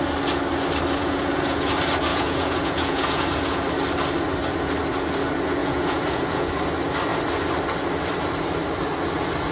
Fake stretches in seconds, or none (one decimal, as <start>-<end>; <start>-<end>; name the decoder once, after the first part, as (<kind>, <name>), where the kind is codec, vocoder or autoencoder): 1.0-1.7 (vocoder, Vocos); 2.1-3.6; 5.6-6.5